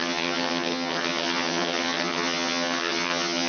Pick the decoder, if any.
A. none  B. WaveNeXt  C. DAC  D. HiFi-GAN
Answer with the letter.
D